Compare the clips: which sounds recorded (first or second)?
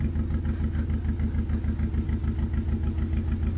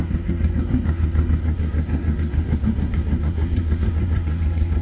first